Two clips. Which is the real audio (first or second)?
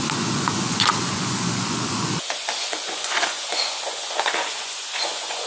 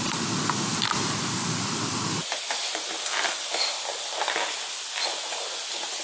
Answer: second